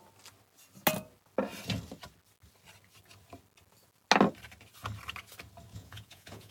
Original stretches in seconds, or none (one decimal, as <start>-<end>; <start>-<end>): 0.0-5.7